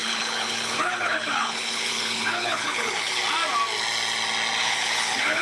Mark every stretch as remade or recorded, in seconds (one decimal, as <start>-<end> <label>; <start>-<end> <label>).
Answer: 0.0-3.2 remade; 3.2-4.6 recorded; 4.6-5.4 remade

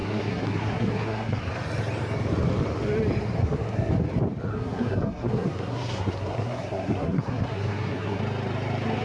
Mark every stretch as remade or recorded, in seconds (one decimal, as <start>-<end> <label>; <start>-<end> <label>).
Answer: 0.0-1.4 remade; 1.4-3.4 recorded; 3.4-3.9 remade; 3.9-4.5 recorded; 4.5-8.2 remade; 8.2-9.0 recorded

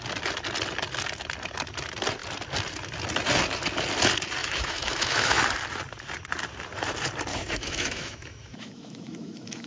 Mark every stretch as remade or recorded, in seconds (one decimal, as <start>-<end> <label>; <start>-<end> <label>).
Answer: 0.0-4.4 recorded; 4.4-5.4 remade; 5.4-7.3 recorded; 7.3-9.7 remade